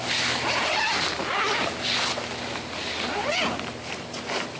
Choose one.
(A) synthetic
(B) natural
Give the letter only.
B